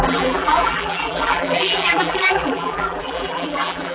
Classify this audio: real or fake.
fake